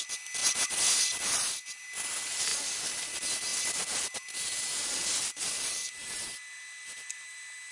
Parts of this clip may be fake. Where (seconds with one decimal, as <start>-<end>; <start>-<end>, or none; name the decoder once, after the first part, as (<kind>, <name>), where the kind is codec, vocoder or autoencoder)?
0.4-1.0 (vocoder, BigVGAN v2); 2.5-3.0